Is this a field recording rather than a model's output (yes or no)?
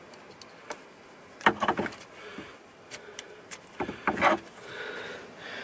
yes